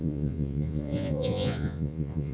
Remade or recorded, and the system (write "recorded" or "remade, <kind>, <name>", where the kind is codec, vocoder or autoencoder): remade, vocoder, Vocos